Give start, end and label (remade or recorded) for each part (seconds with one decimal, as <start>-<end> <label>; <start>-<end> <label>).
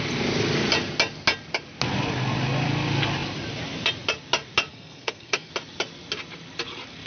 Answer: 0.0-4.7 recorded; 4.7-5.5 remade; 5.5-7.1 recorded